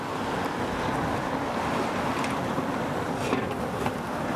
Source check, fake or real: real